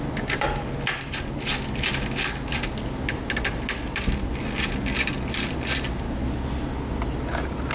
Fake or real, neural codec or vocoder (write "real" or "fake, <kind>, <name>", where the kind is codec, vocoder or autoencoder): real